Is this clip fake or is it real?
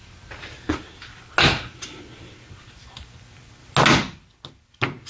real